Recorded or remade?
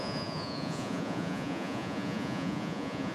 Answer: remade